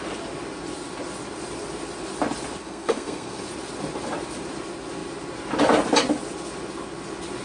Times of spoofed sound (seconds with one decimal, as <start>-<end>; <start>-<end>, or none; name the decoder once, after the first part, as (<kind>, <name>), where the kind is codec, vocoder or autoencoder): 2.6-3.4 (codec, SNAC)